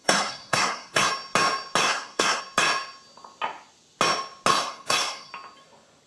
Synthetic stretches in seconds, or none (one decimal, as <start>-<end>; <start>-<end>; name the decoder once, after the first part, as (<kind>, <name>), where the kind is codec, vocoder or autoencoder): 0.0-1.1 (codec, SNAC); 1.8-2.4; 4.5-5.3